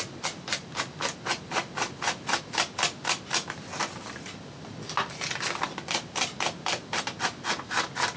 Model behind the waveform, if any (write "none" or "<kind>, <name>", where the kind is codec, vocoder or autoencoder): none